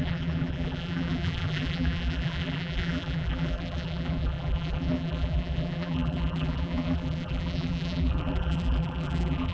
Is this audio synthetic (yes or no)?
yes